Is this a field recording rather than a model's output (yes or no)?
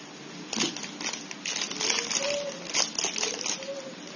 yes